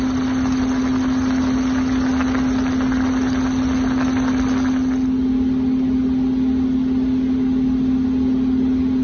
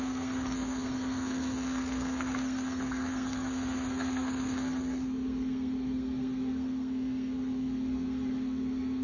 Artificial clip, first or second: second